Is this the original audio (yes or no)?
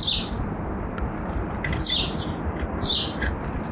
yes